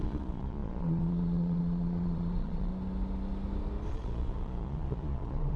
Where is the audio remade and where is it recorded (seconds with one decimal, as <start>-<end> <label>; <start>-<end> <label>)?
0.0-2.7 remade; 2.7-3.9 recorded; 3.9-5.6 remade